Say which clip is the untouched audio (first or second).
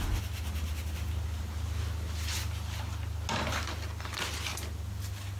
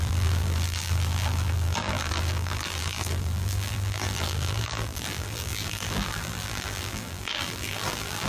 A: first